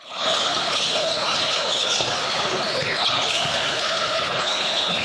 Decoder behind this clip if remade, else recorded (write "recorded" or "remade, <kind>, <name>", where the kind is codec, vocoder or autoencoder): remade, codec, HILCodec